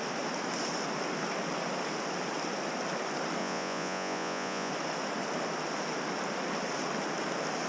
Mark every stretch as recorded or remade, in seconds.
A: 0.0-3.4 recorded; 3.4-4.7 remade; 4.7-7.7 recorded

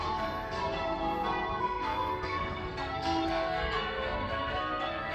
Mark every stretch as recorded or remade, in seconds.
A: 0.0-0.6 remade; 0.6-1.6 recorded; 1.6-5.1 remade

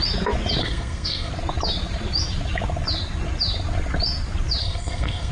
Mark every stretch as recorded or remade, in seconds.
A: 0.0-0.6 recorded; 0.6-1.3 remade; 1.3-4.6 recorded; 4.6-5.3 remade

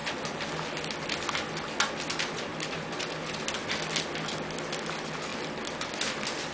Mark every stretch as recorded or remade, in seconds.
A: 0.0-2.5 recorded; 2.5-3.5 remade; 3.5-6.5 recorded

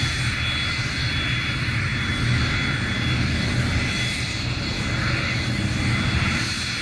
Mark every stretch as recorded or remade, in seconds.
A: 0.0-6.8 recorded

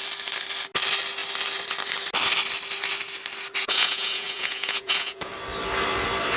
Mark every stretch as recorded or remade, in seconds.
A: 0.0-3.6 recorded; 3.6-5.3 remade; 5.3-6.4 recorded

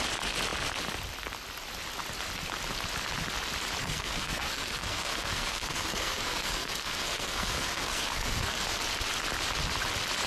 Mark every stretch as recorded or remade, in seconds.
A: 0.0-3.8 recorded; 3.8-8.8 remade; 8.8-10.3 recorded